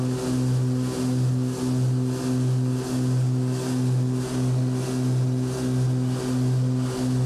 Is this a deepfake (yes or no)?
no